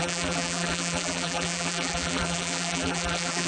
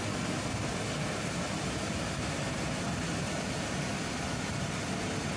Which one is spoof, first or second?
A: first